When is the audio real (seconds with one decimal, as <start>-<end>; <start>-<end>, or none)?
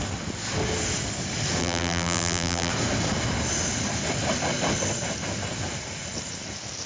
0.0-1.6; 2.7-6.9